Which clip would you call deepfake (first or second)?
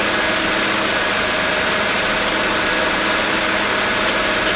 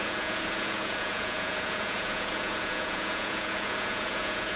second